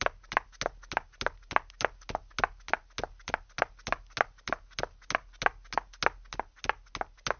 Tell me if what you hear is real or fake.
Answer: real